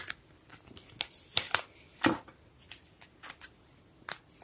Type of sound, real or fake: real